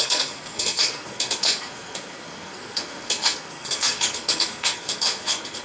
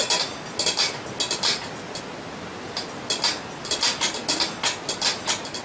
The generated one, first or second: first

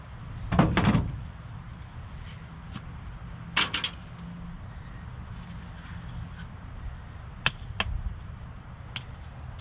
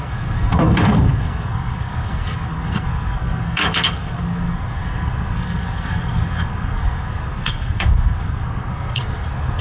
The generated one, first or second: second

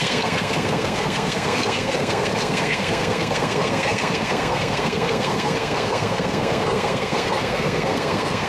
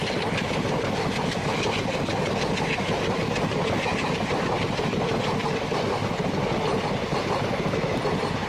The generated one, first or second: first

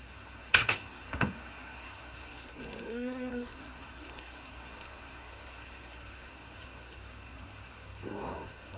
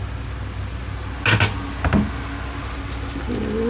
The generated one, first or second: first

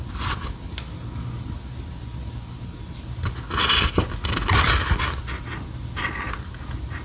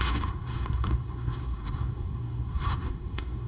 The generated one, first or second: second